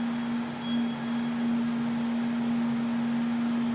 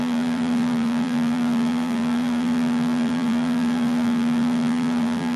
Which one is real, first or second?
first